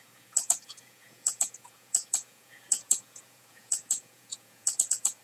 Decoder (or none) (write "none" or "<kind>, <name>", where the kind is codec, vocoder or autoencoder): vocoder, Vocos